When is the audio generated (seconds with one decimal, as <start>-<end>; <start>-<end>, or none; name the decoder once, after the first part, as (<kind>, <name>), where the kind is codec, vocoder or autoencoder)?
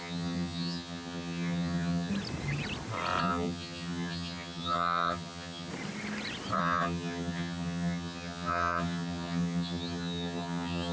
0.0-2.1 (vocoder, HiFi-GAN); 3.2-5.7; 6.6-10.9